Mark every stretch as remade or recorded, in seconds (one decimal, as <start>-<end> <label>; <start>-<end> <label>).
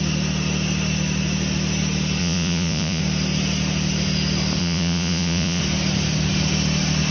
0.0-2.2 recorded; 2.2-3.0 remade; 3.0-4.6 recorded; 4.6-5.6 remade; 5.6-7.1 recorded